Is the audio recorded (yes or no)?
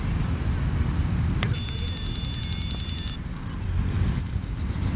no